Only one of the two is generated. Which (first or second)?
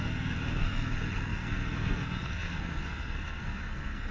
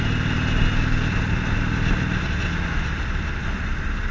first